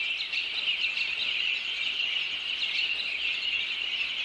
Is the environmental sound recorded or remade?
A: recorded